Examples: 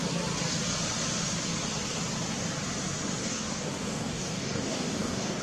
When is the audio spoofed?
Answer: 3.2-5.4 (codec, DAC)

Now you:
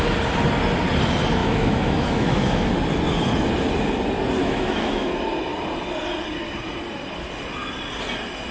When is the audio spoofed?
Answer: 1.4-2.7 (autoencoder, DAC-VAE); 4.4-5.1